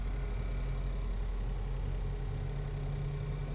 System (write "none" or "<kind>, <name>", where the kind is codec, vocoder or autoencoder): none